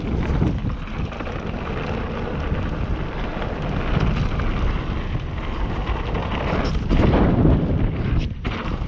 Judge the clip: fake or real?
real